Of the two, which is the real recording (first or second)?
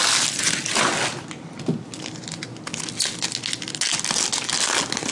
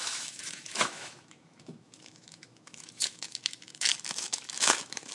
first